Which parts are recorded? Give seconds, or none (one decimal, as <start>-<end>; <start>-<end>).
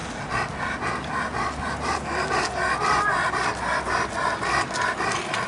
0.0-5.5